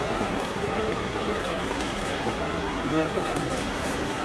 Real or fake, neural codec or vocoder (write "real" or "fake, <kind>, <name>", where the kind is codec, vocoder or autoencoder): fake, codec, SNAC